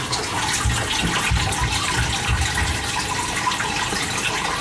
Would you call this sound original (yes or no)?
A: yes